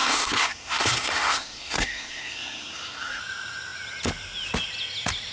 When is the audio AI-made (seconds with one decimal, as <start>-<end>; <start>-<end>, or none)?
0.0-3.2